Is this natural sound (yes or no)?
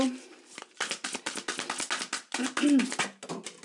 yes